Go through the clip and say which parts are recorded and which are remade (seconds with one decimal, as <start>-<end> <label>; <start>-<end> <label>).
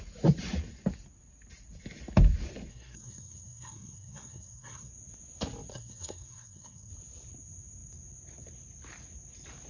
0.0-2.7 recorded; 2.7-4.9 remade; 4.9-5.7 recorded; 5.7-6.9 remade; 6.9-9.7 recorded